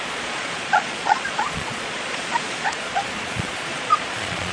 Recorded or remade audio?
remade